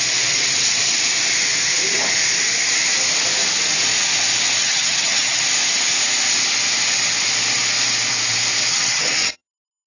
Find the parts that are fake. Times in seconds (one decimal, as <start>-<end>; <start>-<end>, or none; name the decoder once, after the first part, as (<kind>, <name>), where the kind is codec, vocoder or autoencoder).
4.6-5.4 (vocoder, HiFi-GAN); 8.7-9.4